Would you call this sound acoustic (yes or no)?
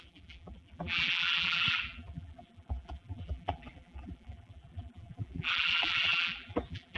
no